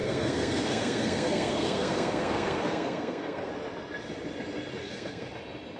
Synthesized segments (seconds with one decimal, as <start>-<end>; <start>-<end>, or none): 0.0-3.5; 4.8-5.3

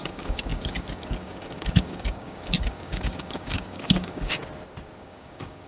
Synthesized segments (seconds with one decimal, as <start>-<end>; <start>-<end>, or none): 0.0-4.4; 5.0-5.7

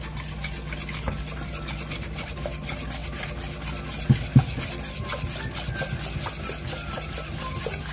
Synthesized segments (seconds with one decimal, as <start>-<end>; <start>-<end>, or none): none